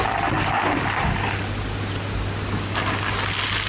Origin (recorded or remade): recorded